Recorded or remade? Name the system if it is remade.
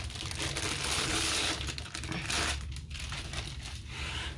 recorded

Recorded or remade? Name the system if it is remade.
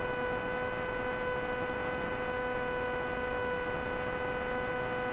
recorded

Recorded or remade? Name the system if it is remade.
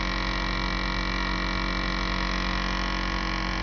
recorded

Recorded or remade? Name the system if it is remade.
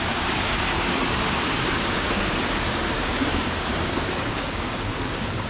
remade, codec, DAC